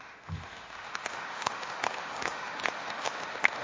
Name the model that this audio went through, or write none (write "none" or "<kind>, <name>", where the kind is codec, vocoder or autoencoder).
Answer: autoencoder, DAC-VAE